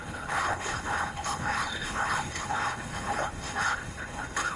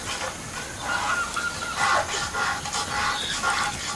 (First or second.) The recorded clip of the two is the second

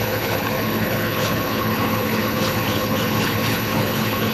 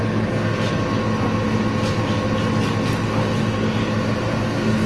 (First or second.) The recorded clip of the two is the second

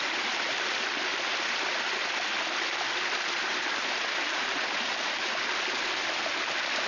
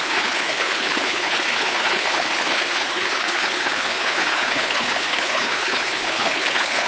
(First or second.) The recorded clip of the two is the first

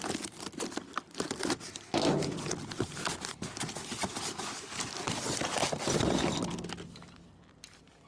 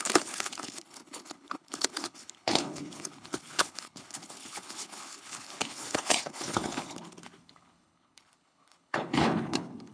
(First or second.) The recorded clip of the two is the first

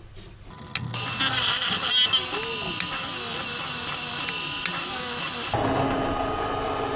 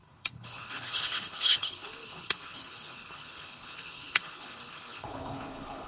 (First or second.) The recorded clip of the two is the first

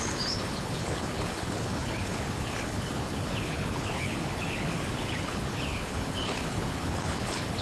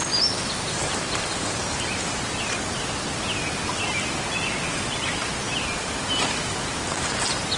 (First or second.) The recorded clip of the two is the second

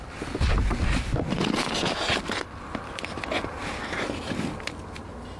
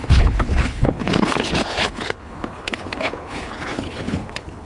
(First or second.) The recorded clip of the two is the first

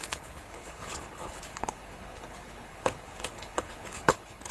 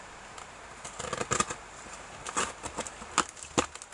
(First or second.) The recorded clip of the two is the second